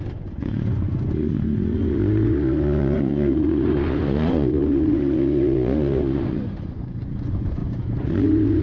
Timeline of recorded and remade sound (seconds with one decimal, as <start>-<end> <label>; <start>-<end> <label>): 0.0-8.6 remade